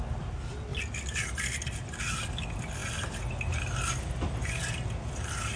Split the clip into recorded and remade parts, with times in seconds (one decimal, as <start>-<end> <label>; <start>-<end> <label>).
0.0-5.6 recorded